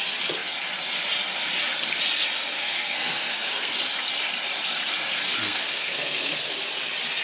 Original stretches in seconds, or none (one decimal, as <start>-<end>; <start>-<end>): 0.0-2.6; 3.7-5.4; 6.5-7.2